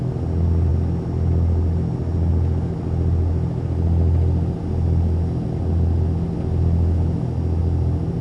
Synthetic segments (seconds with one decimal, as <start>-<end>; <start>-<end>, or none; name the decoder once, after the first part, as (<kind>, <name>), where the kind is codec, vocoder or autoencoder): none